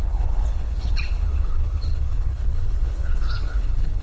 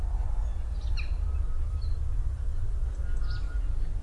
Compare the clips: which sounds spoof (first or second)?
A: first